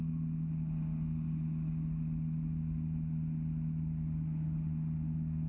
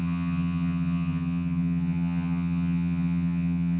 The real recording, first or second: first